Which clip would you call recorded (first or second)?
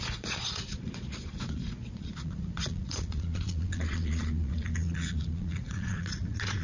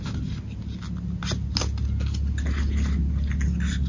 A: second